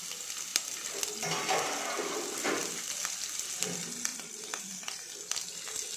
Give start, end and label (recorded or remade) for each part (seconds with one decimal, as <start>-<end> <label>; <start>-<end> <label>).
0.0-0.5 recorded; 0.5-1.0 remade; 1.0-2.6 recorded; 2.6-3.3 remade; 3.3-4.1 recorded; 4.1-4.6 remade; 4.6-6.0 recorded